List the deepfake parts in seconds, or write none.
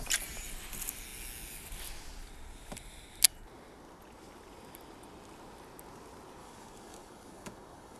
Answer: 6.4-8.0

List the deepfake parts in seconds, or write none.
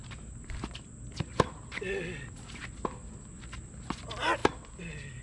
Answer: none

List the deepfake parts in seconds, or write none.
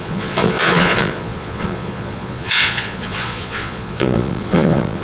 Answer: 0.0-5.0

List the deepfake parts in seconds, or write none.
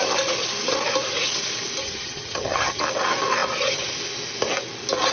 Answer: 1.8-2.8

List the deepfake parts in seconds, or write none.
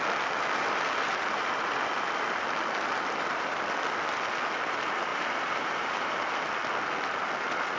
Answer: 5.1-6.3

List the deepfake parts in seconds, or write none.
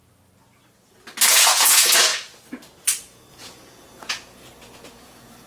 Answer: 1.3-2.1; 3.3-5.5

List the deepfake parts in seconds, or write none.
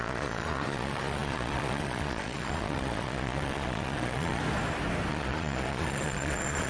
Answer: 0.0-4.4; 5.1-6.7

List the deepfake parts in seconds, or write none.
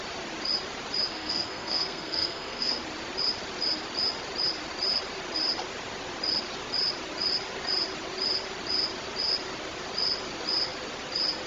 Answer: 1.1-2.8